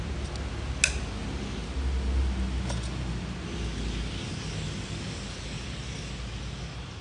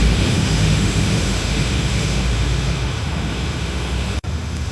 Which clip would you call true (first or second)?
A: first